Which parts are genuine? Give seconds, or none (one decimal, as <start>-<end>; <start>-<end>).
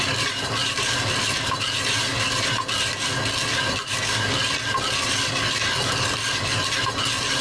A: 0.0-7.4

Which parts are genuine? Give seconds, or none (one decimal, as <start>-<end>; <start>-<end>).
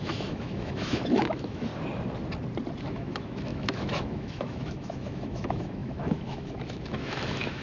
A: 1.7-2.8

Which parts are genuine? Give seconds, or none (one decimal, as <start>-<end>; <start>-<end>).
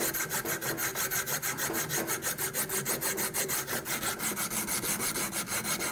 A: 0.0-5.9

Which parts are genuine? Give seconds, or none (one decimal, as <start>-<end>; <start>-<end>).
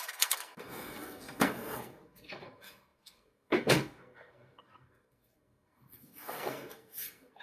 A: none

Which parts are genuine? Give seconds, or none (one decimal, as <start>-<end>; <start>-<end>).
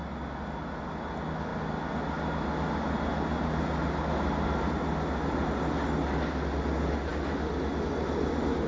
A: 0.0-8.7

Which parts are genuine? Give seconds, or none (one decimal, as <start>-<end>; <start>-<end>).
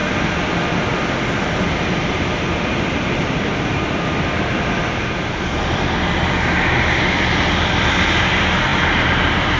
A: 0.0-1.7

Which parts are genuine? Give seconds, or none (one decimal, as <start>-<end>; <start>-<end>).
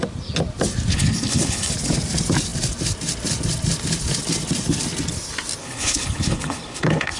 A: 0.0-0.9; 1.7-5.6